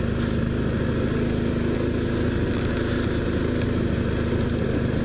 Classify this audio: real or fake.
real